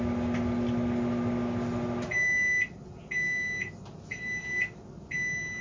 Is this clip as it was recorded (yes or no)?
yes